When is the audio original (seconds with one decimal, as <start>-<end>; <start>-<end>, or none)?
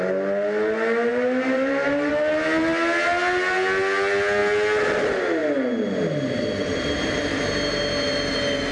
0.0-1.1; 2.1-8.7